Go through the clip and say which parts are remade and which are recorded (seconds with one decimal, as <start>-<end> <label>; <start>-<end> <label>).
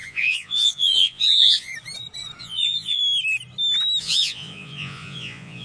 0.0-1.7 remade; 1.7-2.4 recorded; 2.4-3.0 remade; 3.0-4.0 recorded; 4.0-5.6 remade